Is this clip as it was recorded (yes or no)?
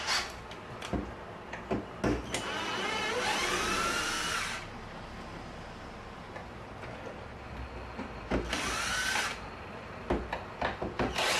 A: yes